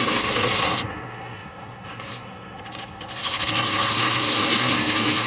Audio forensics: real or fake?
fake